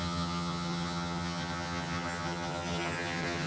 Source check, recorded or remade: remade